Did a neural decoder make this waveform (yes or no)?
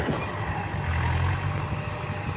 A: no